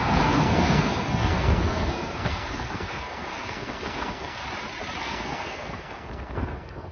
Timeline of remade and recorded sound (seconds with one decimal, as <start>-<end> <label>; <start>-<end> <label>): 0.0-4.4 remade; 4.4-5.0 recorded; 5.0-6.9 remade